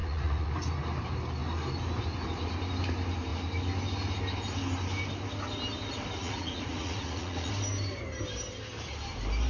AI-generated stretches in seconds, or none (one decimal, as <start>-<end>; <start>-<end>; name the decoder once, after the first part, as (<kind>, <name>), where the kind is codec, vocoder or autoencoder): 0.0-0.5 (vocoder, Vocos); 6.2-7.5